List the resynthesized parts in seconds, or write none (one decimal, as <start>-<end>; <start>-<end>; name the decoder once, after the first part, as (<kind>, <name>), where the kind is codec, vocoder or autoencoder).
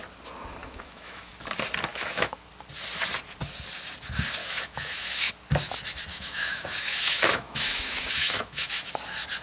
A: 0.6-1.3 (autoencoder, DAC-VAE); 1.9-2.5; 4.4-5.3; 6.1-8.9